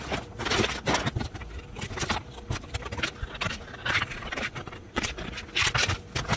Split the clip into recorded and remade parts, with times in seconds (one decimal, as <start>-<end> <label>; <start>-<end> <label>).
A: 0.0-3.8 recorded; 3.8-5.1 remade; 5.1-6.4 recorded

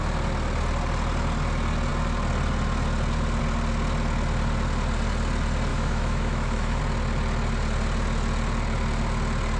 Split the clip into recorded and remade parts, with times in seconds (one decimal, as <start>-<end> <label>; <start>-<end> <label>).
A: 0.0-5.7 recorded; 5.7-6.8 remade; 6.8-9.6 recorded